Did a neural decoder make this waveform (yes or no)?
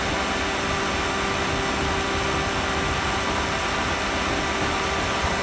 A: no